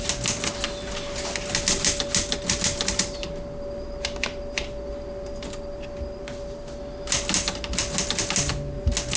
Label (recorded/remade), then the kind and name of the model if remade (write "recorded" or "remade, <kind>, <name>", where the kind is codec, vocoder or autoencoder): recorded